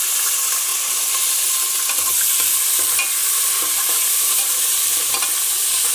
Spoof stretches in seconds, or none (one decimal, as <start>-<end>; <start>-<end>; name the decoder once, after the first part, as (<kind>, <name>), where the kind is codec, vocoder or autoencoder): 3.2-5.1 (vocoder, BigVGAN v2)

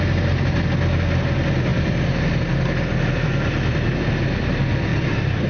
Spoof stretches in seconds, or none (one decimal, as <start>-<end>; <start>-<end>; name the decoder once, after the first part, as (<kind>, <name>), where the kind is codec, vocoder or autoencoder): none

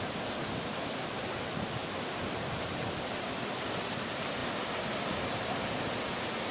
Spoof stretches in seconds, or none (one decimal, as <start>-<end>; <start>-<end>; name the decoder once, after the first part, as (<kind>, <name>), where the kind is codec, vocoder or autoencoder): 4.4-5.4 (vocoder, BigVGAN v2)

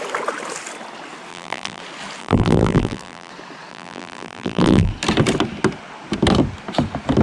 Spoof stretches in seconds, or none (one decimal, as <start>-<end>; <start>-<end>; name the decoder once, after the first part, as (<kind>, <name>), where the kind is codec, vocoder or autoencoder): 1.3-1.8 (vocoder, BigVGAN v2); 2.2-3.3; 3.7-4.9

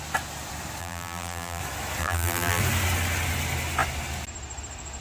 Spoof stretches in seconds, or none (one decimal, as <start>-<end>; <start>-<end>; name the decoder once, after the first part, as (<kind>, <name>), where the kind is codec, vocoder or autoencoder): 0.8-1.6 (vocoder, BigVGAN v2); 2.0-2.6